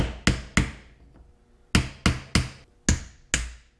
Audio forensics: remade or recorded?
recorded